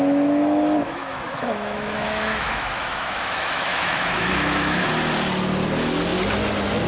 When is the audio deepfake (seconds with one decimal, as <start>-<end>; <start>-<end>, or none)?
0.8-4.9